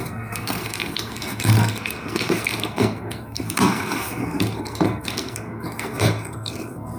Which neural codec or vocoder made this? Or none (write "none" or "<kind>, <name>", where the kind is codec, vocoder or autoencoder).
codec, SNAC